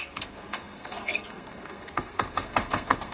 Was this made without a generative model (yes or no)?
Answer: no